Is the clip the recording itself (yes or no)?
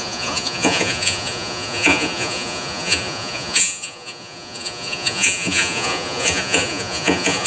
no